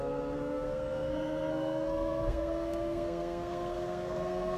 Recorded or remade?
remade